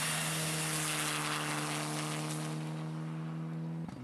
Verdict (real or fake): real